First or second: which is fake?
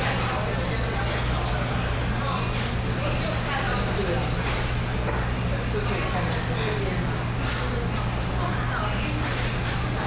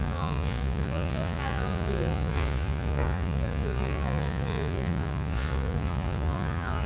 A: second